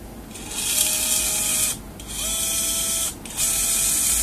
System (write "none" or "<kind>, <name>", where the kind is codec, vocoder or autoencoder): none